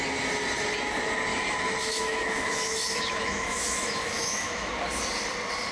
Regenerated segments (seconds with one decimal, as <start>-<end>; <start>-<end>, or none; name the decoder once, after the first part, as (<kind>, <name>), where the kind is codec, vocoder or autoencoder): 1.3-4.7 (autoencoder, DAC-VAE)